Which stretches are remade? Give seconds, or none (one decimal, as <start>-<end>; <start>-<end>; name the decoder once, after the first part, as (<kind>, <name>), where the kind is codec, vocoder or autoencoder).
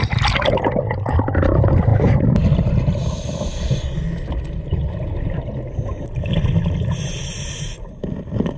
none